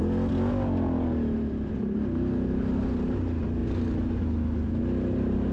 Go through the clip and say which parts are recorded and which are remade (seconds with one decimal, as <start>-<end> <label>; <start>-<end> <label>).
0.0-5.5 recorded